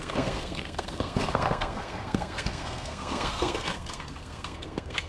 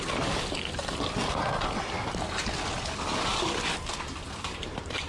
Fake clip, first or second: first